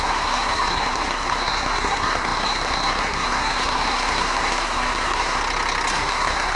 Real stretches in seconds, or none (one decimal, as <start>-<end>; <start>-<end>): 5.4-5.9